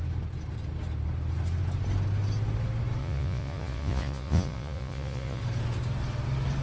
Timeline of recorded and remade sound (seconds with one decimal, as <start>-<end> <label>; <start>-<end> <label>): 0.0-3.0 recorded; 3.0-5.4 remade; 5.4-6.6 recorded